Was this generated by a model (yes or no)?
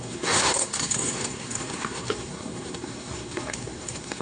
yes